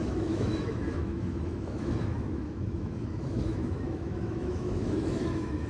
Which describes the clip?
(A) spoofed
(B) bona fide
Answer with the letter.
A